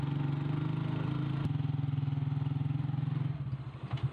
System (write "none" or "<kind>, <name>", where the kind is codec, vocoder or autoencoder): none